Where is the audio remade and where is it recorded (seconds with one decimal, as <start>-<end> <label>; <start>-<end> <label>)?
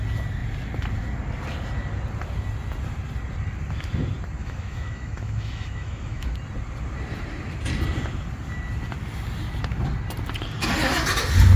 0.0-4.4 recorded; 4.4-6.3 remade; 6.3-11.6 recorded